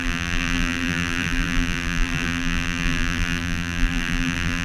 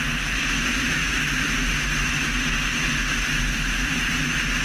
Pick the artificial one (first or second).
first